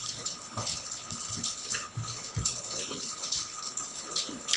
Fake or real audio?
fake